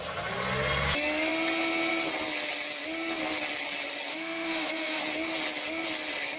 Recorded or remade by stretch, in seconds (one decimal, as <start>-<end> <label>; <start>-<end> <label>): 0.0-4.1 recorded; 4.1-5.0 remade; 5.0-6.4 recorded